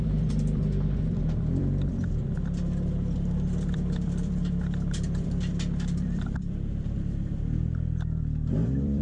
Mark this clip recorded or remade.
remade